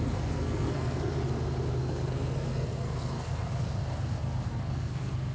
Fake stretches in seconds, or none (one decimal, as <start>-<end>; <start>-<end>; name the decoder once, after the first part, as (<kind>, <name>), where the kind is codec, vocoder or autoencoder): 0.0-1.2 (codec, SNAC); 1.8-3.8; 4.5-5.3